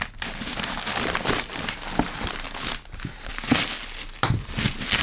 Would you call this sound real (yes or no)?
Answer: yes